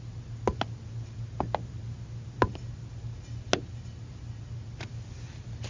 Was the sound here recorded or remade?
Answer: recorded